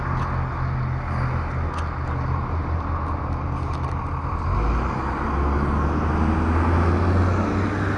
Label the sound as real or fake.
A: real